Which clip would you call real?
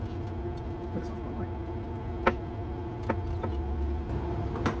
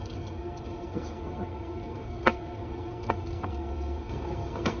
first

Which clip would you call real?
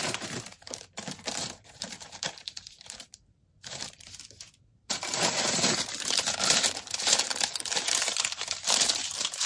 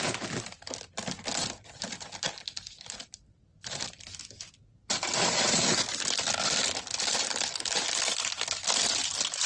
second